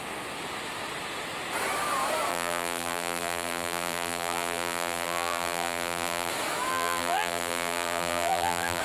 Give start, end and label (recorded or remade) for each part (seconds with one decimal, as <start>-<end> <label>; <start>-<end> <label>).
0.0-2.3 recorded; 2.3-6.3 remade; 6.3-6.7 recorded; 6.7-8.8 remade